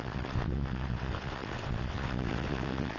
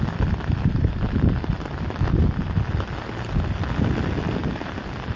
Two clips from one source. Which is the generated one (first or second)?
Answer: first